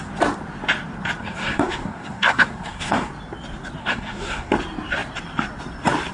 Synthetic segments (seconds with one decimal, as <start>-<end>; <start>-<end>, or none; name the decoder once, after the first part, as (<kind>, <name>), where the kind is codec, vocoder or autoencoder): 1.2-3.1 (codec, SNAC); 3.8-4.5